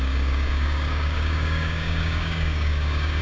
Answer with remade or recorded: remade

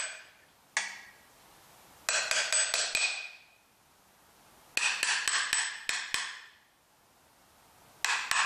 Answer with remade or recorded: recorded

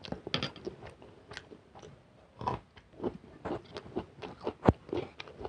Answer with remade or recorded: recorded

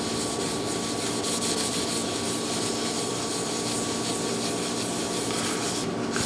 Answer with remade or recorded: recorded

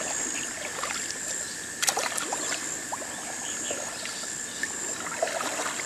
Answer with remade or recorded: remade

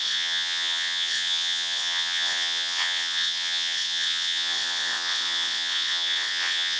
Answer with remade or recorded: remade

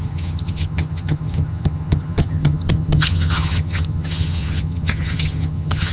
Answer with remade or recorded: remade